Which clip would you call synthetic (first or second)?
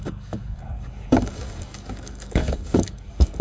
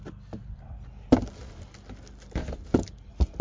first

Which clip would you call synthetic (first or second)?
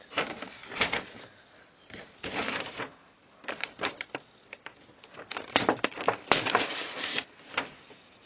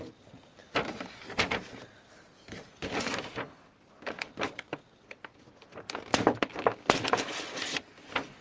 first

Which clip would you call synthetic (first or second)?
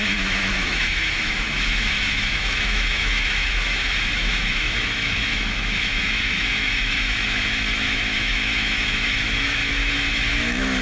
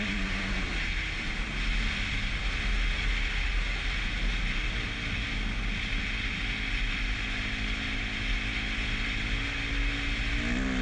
first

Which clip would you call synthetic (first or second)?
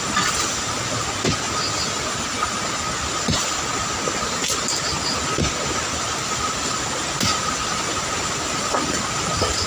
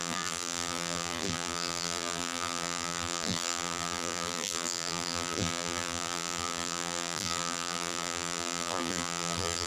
second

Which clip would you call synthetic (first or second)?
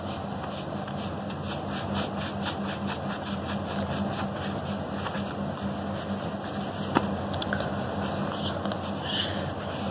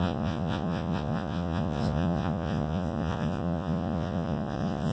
second